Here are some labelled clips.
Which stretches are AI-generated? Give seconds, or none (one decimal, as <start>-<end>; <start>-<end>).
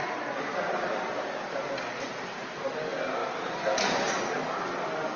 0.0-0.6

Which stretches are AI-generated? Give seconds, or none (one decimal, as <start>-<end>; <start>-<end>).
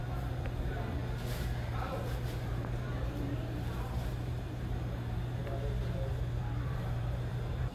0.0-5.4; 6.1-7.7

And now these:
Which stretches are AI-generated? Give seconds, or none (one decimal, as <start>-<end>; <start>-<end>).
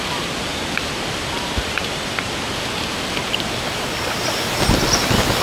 0.5-2.6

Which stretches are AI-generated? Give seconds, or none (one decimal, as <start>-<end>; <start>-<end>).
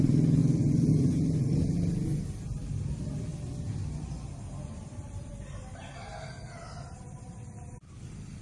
none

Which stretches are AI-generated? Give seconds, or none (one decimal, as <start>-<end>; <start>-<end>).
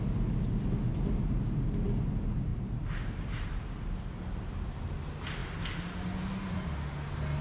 none